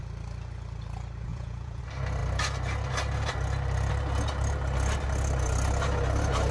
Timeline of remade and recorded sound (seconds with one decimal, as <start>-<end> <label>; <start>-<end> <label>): 0.0-1.3 recorded; 1.3-1.8 remade; 1.8-6.5 recorded